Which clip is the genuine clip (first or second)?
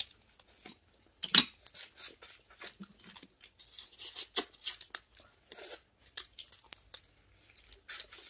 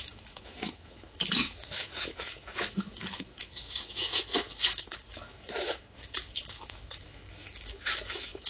first